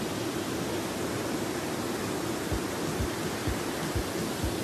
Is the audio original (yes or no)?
yes